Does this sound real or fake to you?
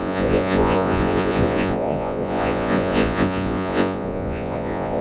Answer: fake